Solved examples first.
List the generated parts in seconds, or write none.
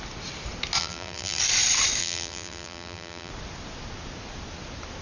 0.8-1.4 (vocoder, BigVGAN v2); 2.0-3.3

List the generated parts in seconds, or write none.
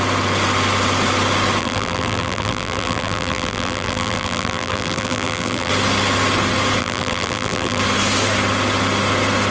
1.6-5.7 (vocoder, BigVGAN v2); 6.8-7.8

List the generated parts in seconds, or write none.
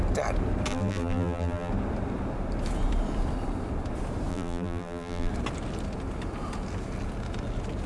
0.7-1.7 (vocoder, BigVGAN v2); 4.3-5.3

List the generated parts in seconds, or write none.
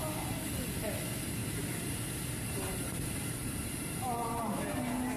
1.4-4.5 (vocoder, BigVGAN v2)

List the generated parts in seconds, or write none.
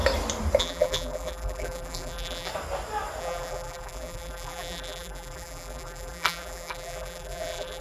0.6-2.5 (vocoder, BigVGAN v2); 3.2-7.8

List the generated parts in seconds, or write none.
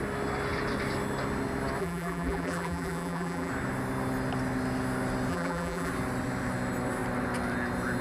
1.8-3.5 (vocoder, BigVGAN v2); 5.3-5.9